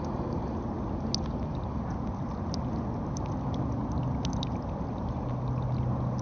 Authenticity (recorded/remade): recorded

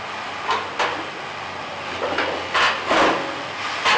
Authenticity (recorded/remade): recorded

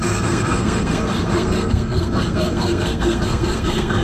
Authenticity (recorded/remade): remade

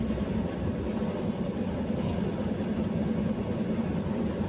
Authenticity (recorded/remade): recorded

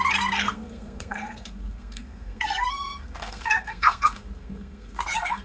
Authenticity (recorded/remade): remade